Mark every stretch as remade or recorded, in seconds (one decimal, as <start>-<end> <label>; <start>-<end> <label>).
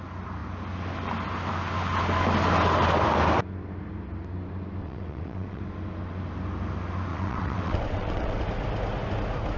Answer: 0.0-4.8 recorded; 4.8-5.6 remade; 5.6-7.1 recorded; 7.1-8.4 remade; 8.4-9.6 recorded